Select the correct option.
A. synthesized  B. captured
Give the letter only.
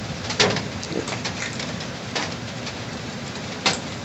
A